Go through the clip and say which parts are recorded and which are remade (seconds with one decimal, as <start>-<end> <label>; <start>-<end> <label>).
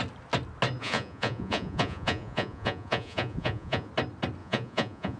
0.0-0.8 recorded; 0.8-3.9 remade; 3.9-4.4 recorded; 4.4-5.2 remade